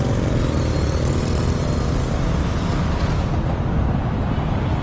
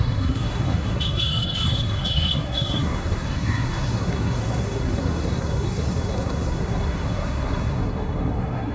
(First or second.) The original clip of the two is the first